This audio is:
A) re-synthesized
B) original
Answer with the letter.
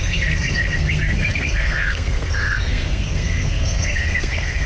A